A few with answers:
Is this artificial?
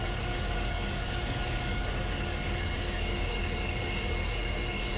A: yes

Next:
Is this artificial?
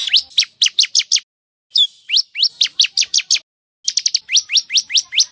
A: no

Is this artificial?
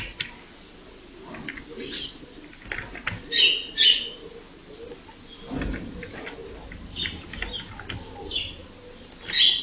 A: no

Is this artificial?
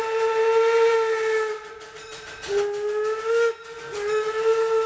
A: no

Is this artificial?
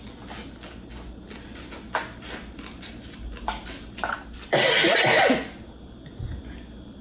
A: no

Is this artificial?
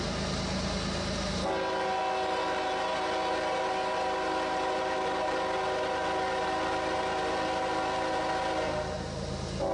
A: no